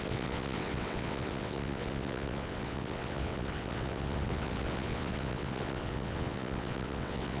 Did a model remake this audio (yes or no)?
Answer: yes